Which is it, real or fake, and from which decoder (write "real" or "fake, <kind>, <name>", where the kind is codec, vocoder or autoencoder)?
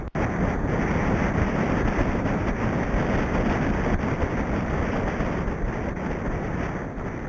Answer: real